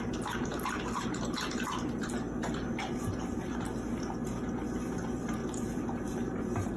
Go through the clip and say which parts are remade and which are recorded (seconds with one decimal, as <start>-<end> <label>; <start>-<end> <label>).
0.0-6.8 recorded